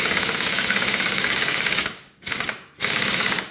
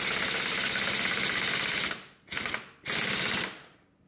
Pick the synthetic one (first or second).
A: first